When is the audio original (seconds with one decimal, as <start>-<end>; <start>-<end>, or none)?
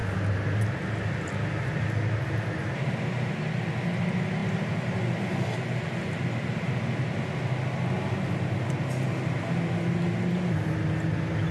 0.0-11.5